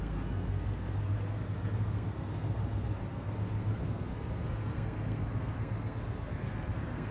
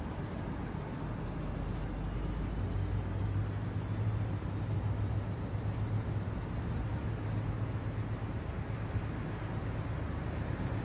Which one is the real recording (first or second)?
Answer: second